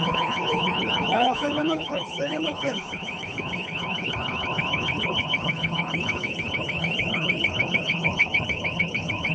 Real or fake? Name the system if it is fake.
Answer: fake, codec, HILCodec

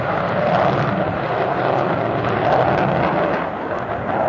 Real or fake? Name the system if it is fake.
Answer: real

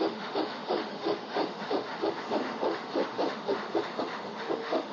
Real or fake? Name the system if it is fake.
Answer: fake, autoencoder, DAC-VAE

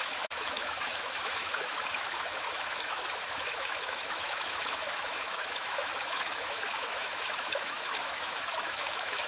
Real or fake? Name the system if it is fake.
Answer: fake, autoencoder, DAC-VAE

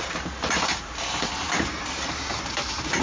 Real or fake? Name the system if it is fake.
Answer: fake, vocoder, BigVGAN v2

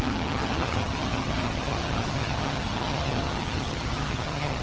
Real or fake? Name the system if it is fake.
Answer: fake, vocoder, HiFi-GAN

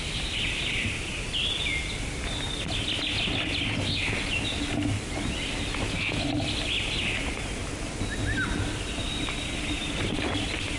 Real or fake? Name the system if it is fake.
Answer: real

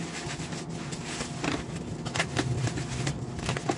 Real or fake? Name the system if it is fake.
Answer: real